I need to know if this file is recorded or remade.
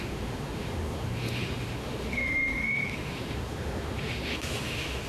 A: remade